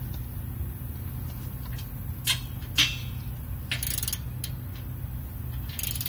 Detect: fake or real real